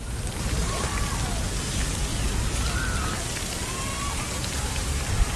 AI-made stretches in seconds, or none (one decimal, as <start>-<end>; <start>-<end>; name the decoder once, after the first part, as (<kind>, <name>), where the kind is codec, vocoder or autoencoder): 0.0-0.9 (vocoder, BigVGAN v2); 1.6-2.1; 4.1-5.4